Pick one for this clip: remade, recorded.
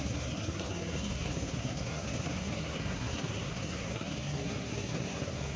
remade